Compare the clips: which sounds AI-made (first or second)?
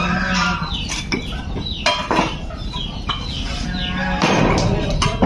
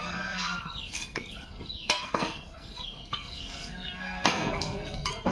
second